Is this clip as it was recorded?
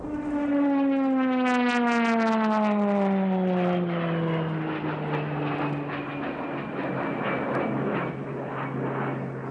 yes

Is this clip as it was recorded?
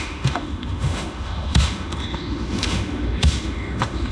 no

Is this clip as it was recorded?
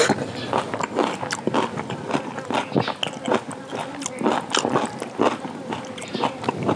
yes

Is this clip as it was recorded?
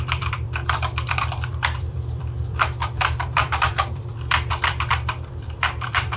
no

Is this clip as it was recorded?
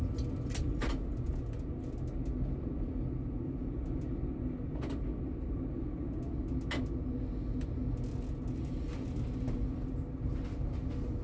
yes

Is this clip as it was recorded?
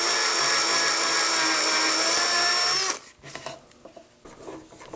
yes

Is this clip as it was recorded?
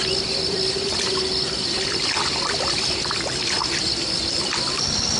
yes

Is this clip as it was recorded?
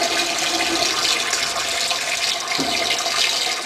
yes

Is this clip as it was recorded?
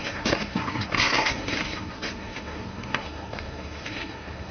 no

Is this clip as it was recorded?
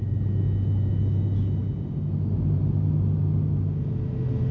yes